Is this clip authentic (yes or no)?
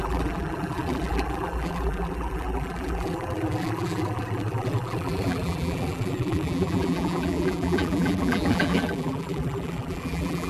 no